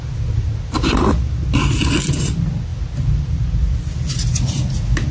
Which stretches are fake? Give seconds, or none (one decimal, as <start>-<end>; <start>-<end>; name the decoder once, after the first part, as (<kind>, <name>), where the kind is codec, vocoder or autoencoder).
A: none